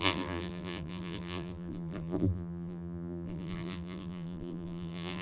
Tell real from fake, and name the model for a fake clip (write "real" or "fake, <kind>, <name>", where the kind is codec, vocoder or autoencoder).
fake, vocoder, BigVGAN v2